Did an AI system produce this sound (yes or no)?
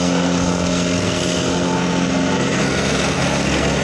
yes